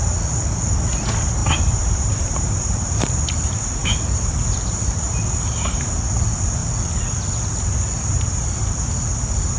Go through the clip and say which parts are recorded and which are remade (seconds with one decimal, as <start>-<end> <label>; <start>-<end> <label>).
0.0-1.4 recorded; 1.4-5.9 remade; 5.9-9.6 recorded